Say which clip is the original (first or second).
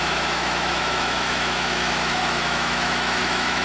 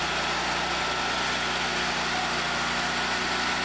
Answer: second